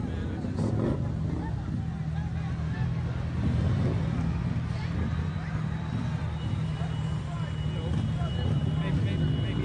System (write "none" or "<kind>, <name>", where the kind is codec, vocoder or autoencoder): none